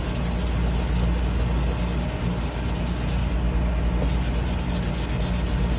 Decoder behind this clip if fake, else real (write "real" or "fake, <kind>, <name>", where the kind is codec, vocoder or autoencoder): real